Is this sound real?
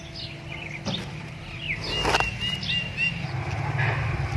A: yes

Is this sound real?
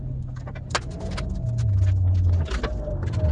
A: yes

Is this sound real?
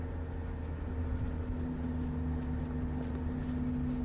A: yes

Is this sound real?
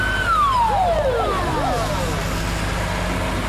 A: yes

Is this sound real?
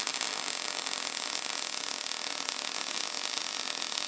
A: yes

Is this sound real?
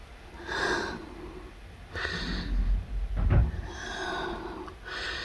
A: yes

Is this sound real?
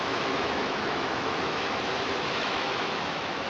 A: no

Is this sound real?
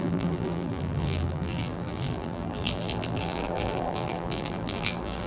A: no